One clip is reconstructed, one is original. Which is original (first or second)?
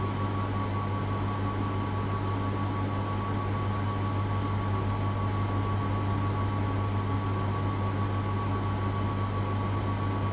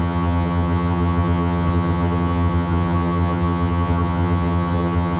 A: first